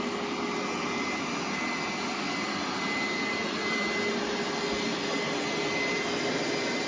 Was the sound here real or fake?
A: real